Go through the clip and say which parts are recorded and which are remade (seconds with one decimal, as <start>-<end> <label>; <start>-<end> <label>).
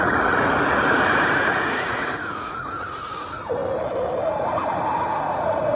0.0-3.6 remade; 3.6-5.2 recorded; 5.2-5.8 remade